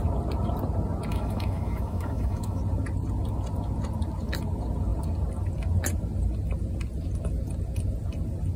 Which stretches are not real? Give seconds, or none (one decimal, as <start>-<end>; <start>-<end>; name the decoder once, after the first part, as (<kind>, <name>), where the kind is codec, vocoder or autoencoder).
1.1-2.6 (autoencoder, DAC-VAE)